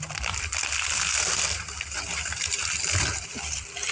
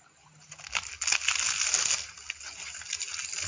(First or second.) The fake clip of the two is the first